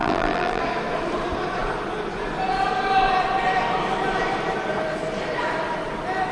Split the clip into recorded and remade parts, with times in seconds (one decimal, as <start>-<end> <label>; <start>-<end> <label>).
0.0-0.6 remade; 0.6-6.3 recorded